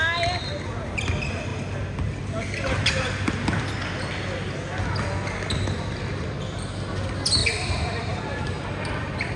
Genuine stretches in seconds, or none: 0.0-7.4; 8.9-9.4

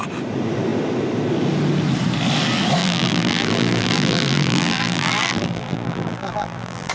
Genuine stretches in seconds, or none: 0.0-2.8